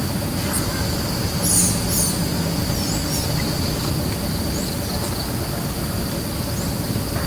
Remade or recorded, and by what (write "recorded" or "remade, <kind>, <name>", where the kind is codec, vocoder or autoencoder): recorded